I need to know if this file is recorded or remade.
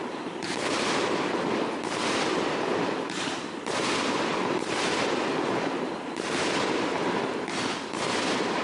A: remade